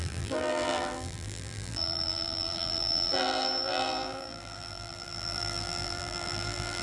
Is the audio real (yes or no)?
no